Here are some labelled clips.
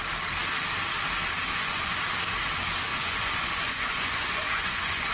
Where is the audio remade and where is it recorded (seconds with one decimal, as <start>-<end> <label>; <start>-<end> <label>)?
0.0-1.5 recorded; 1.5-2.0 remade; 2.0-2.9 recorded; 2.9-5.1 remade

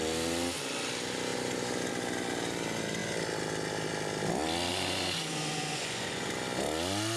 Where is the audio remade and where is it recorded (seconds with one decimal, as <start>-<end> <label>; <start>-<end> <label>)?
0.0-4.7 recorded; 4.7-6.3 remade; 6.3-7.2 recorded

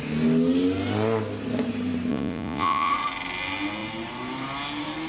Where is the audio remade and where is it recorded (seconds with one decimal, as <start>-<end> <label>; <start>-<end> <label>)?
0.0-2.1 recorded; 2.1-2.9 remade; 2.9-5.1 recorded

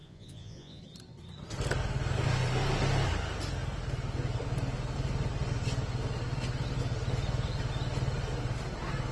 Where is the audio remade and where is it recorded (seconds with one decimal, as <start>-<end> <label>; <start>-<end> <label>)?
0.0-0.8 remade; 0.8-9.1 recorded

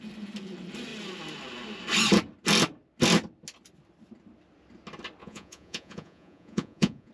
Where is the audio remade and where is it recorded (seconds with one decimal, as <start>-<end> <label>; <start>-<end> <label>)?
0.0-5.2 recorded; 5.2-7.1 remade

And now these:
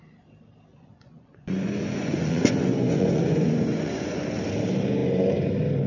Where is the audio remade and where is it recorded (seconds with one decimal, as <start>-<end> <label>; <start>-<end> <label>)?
0.0-0.7 recorded; 0.7-4.2 remade; 4.2-5.9 recorded

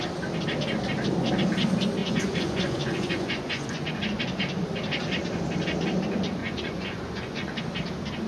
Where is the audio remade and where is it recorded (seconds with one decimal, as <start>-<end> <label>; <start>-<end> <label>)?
0.0-2.0 recorded; 2.0-4.2 remade; 4.2-6.4 recorded; 6.4-7.6 remade; 7.6-8.3 recorded

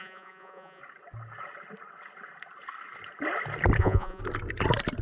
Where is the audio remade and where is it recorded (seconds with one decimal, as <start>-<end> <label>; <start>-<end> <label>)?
0.0-0.8 remade; 0.8-3.8 recorded; 3.8-4.2 remade; 4.2-5.0 recorded